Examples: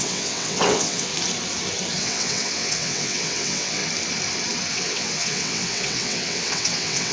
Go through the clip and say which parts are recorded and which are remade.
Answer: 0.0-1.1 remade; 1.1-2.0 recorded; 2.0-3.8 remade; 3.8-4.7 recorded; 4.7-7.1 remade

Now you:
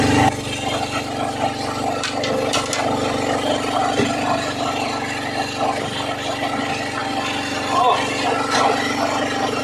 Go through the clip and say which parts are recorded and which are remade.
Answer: 0.0-3.8 recorded; 3.8-4.9 remade; 4.9-9.6 recorded